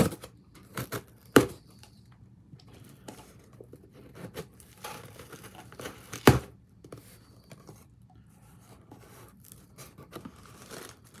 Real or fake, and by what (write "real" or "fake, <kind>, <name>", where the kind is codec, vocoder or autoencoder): fake, vocoder, BigVGAN v2